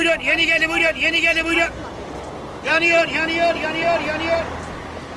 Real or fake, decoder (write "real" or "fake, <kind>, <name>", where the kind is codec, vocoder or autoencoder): real